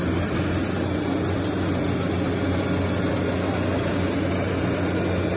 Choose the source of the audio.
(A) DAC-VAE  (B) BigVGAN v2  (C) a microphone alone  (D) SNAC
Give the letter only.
C